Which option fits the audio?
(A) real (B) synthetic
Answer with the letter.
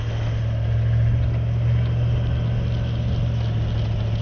A